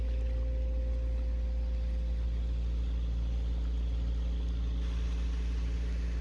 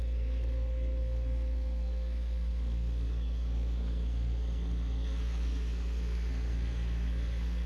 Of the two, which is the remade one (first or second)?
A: second